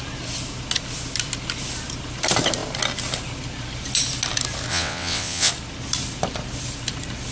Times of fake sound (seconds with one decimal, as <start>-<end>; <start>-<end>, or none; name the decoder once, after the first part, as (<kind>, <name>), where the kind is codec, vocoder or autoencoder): 4.7-5.5 (vocoder, WaveNeXt)